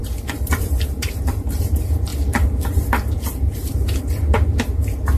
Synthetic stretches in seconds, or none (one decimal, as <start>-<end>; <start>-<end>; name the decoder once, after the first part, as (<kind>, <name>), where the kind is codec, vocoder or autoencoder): 0.0-5.2 (vocoder, BigVGAN v2)